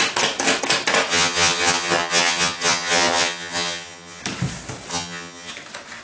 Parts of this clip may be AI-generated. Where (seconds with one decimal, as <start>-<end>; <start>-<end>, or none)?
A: 1.1-4.2; 4.9-5.5